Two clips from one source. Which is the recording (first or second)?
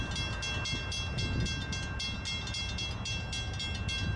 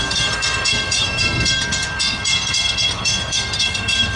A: first